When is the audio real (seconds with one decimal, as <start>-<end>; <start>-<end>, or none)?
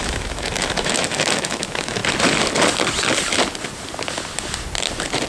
2.0-5.3